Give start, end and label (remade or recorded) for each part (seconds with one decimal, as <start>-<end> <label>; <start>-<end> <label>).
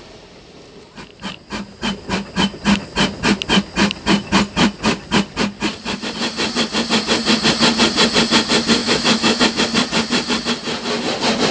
0.0-8.8 recorded; 8.8-9.4 remade; 9.4-11.5 recorded